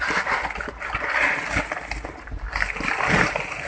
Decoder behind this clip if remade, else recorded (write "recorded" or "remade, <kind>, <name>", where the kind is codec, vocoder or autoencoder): recorded